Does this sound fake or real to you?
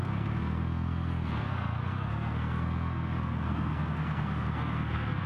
fake